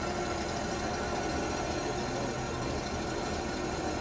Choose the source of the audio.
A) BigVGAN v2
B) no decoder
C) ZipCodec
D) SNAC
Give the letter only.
B